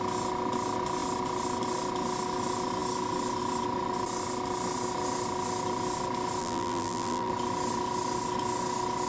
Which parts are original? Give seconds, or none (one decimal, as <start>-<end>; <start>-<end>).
0.0-6.4; 7.3-9.1